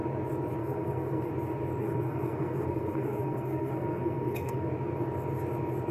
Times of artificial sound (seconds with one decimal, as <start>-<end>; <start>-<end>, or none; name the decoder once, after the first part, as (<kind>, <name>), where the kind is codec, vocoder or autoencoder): 0.6-1.3 (codec, SNAC); 1.8-4.7